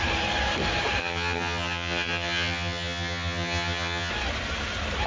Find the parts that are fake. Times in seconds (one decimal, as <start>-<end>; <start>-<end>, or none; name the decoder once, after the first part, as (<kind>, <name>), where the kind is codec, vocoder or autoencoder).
1.0-4.1 (vocoder, HiFi-GAN)